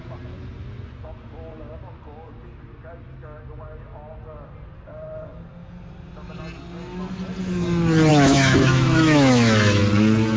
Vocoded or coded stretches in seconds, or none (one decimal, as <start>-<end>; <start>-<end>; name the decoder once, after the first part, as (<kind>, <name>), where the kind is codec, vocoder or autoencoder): 8.1-9.8 (autoencoder, DAC-VAE)